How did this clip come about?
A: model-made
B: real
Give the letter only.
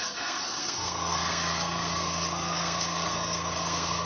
A